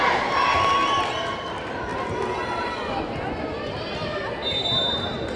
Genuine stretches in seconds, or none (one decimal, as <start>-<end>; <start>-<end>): 0.0-1.9